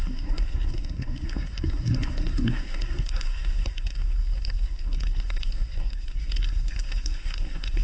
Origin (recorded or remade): remade